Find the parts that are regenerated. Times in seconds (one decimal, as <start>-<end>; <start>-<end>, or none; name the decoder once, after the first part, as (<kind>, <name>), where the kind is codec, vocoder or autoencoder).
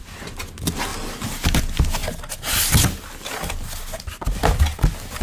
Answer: 0.9-1.6 (vocoder, BigVGAN v2)